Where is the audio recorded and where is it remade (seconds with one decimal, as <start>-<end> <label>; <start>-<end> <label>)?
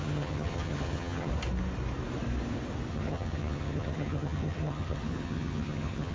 0.0-1.3 remade; 1.3-2.9 recorded; 2.9-6.1 remade